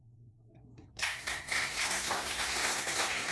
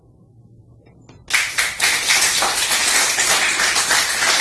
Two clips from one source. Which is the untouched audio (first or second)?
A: second